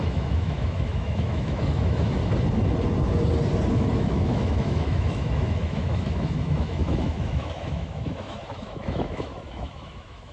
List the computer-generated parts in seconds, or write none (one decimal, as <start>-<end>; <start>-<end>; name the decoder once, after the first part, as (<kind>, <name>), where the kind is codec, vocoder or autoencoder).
0.0-2.2 (autoencoder, DAC-VAE); 3.7-10.3